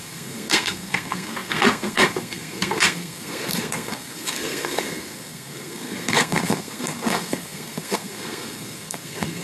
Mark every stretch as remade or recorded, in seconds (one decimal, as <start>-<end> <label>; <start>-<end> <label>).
0.0-9.4 remade